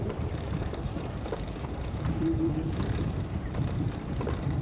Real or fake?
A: fake